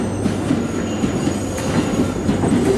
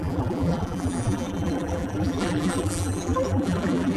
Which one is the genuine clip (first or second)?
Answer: first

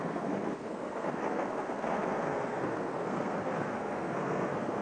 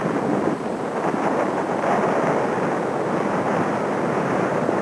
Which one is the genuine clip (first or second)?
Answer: second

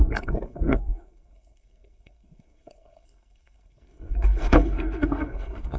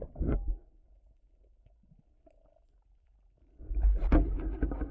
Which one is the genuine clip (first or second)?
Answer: second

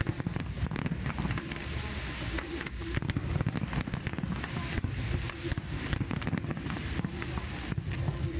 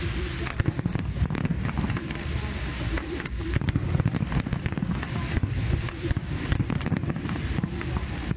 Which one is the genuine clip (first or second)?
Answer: first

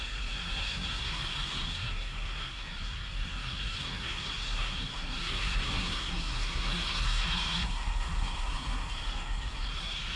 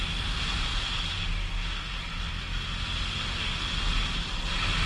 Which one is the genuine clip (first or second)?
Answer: second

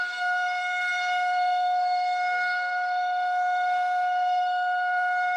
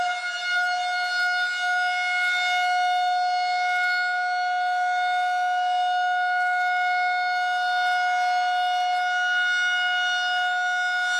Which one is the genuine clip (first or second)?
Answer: second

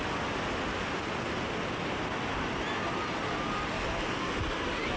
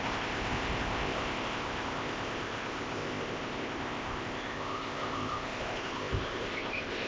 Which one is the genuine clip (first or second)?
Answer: first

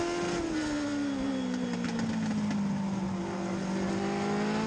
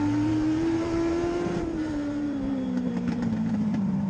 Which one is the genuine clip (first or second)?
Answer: first